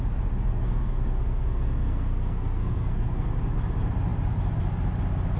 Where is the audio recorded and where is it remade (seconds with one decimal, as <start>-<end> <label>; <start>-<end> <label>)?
0.0-0.5 recorded; 0.5-3.3 remade; 3.3-5.4 recorded